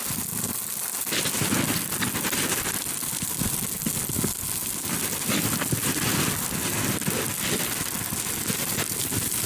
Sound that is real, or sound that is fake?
real